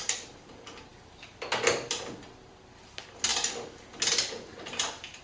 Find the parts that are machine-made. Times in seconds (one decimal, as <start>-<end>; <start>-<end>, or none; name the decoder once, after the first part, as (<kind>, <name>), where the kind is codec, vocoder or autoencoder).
none